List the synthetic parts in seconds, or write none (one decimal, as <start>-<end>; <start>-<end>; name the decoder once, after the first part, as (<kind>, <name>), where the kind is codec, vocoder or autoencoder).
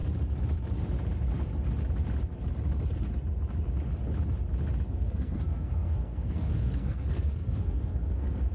4.9-8.5 (codec, SNAC)